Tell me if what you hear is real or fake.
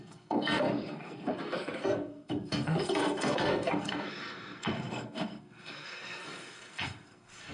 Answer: fake